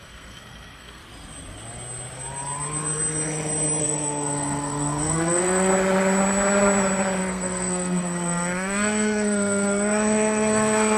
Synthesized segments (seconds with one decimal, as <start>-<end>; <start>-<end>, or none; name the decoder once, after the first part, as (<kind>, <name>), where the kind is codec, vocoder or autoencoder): 0.0-1.0 (codec, SNAC); 3.8-5.7; 7.2-11.0